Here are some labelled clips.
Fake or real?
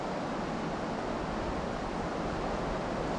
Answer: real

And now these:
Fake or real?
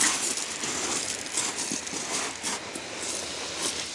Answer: real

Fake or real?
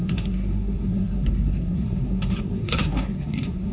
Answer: fake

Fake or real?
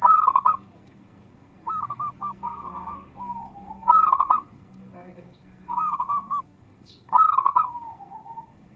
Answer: fake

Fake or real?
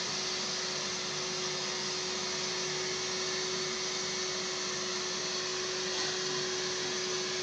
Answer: real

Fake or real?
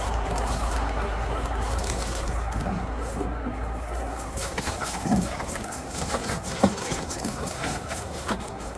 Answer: fake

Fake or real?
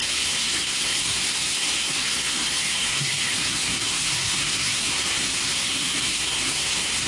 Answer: fake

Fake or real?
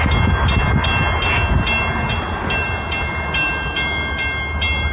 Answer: real